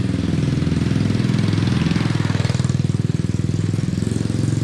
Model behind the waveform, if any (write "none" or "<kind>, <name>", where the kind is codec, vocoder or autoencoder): none